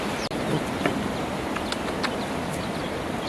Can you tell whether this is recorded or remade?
recorded